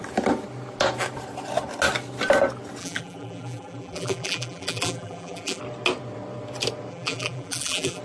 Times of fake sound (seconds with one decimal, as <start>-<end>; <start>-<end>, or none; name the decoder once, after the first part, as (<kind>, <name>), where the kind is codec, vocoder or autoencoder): 2.8-5.6 (vocoder, BigVGAN v2); 6.9-8.0